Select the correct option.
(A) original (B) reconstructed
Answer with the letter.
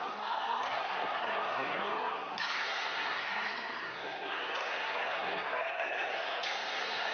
B